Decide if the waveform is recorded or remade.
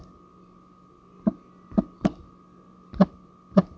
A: recorded